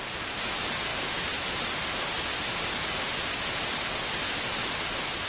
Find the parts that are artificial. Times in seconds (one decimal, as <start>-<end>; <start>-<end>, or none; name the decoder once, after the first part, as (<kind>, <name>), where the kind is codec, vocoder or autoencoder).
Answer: none